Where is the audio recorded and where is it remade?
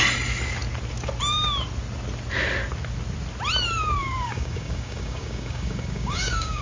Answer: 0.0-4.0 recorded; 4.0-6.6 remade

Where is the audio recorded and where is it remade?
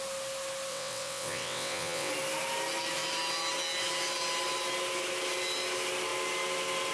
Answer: 0.0-0.7 recorded; 0.7-2.1 remade; 2.1-6.9 recorded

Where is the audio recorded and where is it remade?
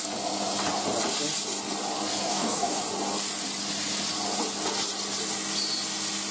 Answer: 0.0-2.3 recorded; 2.3-2.8 remade; 2.8-6.3 recorded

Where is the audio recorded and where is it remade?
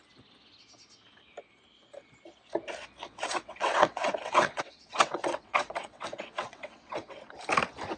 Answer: 0.0-3.0 recorded; 3.0-7.2 remade; 7.2-8.0 recorded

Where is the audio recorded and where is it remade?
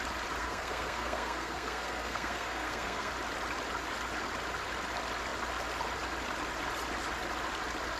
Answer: 0.0-0.4 recorded; 0.4-3.1 remade; 3.1-8.0 recorded